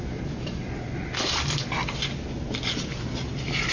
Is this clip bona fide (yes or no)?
yes